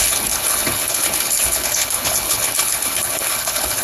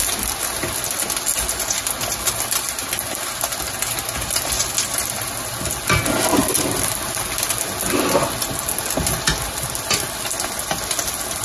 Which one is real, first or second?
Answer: second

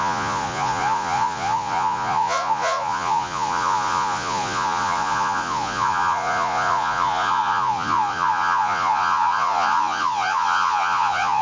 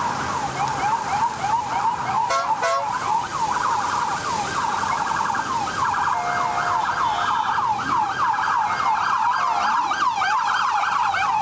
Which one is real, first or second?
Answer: second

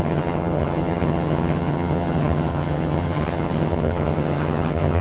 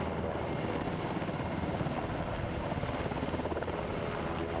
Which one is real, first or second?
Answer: second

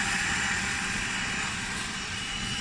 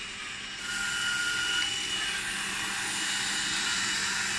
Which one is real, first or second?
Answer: second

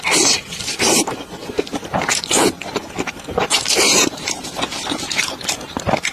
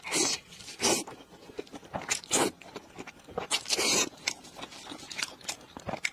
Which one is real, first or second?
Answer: second